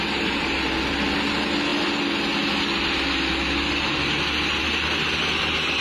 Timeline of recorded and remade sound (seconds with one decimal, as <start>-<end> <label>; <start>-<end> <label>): 0.0-5.8 recorded